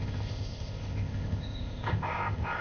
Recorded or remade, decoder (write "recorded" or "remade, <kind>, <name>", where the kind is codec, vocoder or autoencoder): remade, codec, ZipCodec